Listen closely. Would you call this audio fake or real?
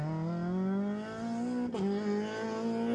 real